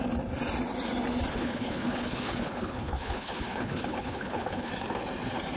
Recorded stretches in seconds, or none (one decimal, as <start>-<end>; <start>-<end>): 0.0-1.3; 4.7-5.6